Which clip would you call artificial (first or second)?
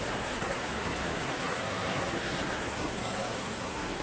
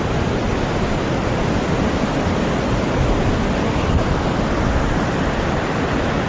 first